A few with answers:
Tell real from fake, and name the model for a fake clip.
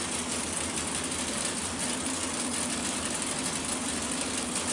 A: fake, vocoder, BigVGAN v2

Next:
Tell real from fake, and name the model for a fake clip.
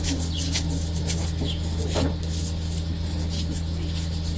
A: real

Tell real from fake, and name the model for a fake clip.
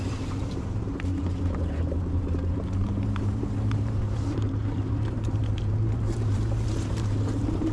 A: fake, vocoder, BigVGAN v2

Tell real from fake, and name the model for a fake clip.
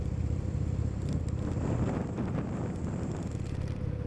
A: fake, vocoder, BigVGAN v2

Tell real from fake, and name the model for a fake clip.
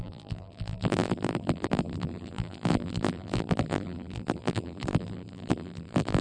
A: fake, vocoder, BigVGAN v2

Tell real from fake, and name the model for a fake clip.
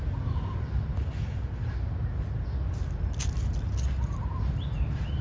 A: real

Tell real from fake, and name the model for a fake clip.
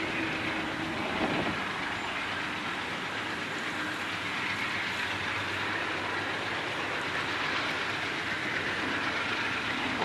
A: real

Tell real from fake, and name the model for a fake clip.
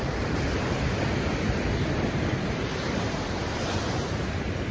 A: fake, vocoder, BigVGAN v2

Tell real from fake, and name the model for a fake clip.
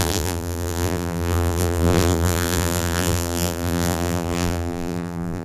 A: fake, vocoder, BigVGAN v2